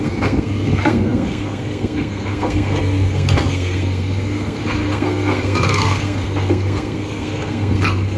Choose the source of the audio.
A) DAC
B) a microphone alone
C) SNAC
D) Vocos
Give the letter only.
C